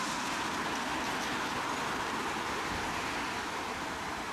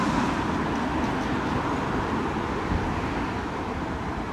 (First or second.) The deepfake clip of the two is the second